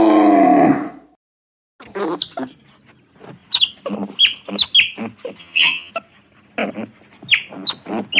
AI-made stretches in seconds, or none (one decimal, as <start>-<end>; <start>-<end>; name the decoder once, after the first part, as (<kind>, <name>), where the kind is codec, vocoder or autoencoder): 5.4-5.9 (vocoder, HiFi-GAN)